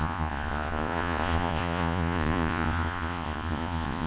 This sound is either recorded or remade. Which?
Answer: remade